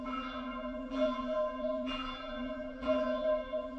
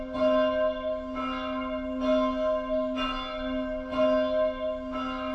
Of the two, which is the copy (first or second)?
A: first